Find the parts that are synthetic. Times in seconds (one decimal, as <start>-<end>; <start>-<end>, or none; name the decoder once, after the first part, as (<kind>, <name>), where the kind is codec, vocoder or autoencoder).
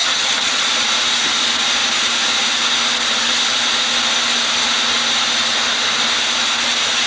0.0-0.6 (vocoder, HiFi-GAN)